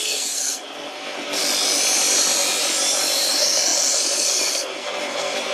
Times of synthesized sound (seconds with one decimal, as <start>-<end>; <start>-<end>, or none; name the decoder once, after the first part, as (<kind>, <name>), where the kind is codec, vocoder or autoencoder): 0.0-1.4 (codec, SNAC); 3.3-5.5